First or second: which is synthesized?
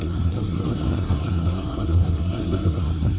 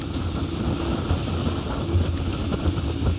first